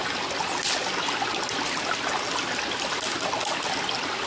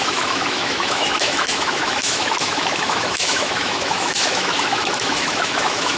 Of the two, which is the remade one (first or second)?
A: second